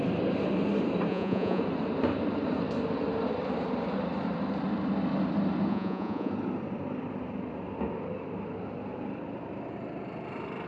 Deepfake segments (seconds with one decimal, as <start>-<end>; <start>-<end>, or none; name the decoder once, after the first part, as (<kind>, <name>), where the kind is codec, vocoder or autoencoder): 1.1-1.6 (vocoder, Vocos); 5.7-6.3